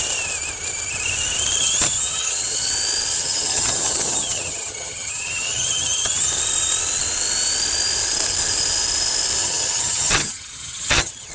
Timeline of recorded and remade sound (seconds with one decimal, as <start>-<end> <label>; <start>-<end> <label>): 0.0-1.6 recorded; 1.6-2.7 remade; 2.7-3.1 recorded; 3.1-6.3 remade; 6.3-9.4 recorded; 9.4-11.3 remade